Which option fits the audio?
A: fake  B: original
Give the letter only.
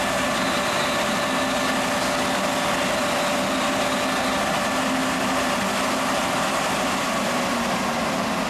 B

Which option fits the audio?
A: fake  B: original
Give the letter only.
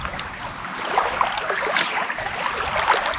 B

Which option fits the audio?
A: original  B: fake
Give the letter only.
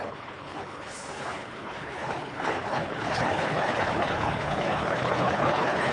B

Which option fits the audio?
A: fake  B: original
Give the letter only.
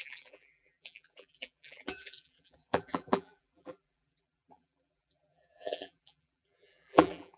A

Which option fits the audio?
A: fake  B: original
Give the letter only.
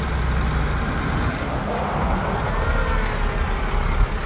B